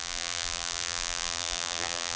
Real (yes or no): no